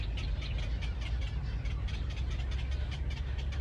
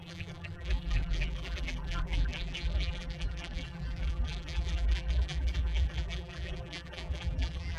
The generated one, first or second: second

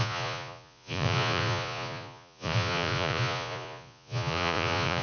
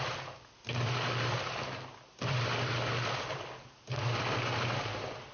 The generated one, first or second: first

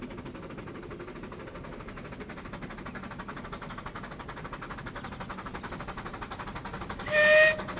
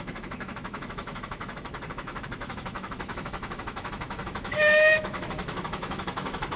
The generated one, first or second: second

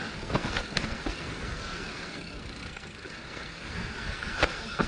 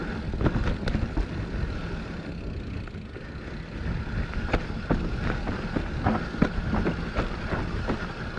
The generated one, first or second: first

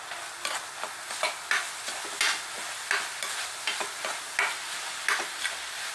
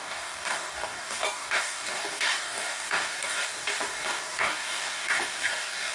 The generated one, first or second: second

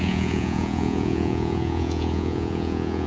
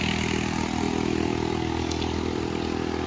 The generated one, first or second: first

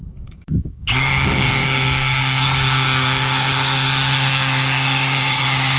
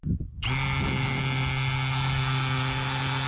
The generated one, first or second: first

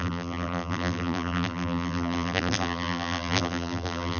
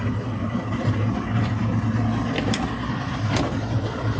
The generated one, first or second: first